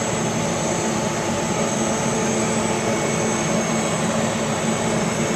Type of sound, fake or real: real